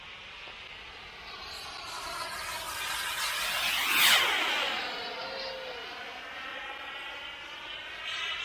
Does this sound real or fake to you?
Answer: real